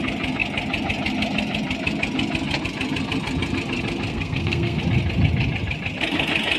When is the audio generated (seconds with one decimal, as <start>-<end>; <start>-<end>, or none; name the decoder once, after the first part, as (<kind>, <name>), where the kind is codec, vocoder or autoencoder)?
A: 4.1-4.8 (codec, SNAC)